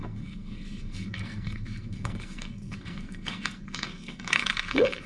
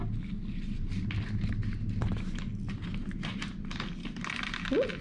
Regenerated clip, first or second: first